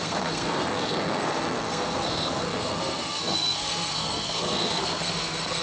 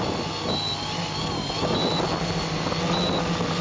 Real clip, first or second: second